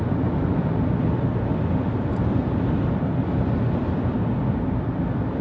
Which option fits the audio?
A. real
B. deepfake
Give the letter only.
A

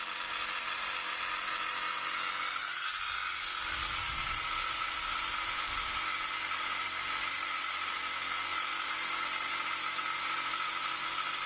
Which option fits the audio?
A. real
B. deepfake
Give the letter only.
A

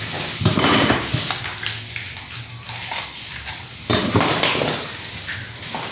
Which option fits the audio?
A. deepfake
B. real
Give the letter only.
B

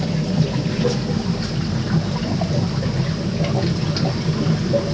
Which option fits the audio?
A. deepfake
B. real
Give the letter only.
B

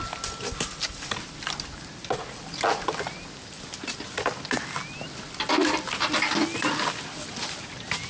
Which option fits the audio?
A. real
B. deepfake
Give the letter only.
A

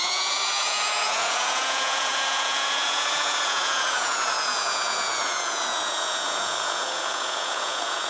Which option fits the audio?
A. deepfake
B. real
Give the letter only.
A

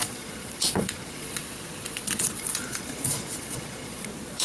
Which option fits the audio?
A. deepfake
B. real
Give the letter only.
A